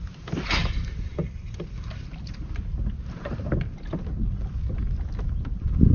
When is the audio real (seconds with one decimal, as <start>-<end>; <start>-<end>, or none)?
0.0-5.9